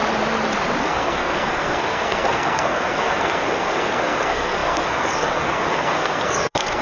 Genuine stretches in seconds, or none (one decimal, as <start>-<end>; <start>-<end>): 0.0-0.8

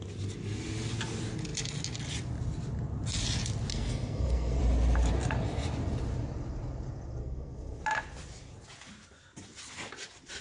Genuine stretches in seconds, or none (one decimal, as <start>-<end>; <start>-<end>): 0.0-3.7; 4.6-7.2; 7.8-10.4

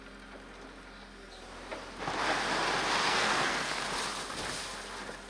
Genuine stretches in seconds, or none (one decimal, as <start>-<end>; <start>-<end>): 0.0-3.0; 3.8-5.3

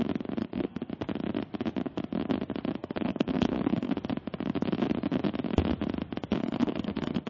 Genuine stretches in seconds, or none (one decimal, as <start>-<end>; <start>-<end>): 0.0-0.4; 0.9-2.8; 3.9-6.4

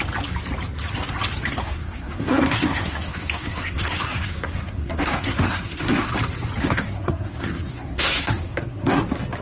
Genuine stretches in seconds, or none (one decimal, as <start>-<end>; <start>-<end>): 0.0-1.6; 6.1-6.6; 9.0-9.4

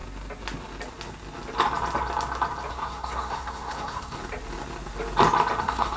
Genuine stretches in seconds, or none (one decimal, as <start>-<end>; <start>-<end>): 0.0-2.7; 4.2-5.6

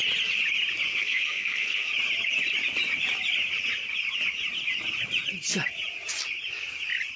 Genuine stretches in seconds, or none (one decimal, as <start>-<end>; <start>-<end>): 0.0-0.9; 1.9-7.2